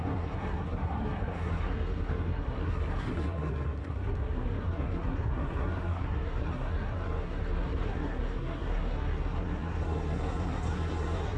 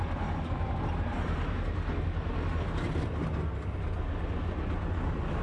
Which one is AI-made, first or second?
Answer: first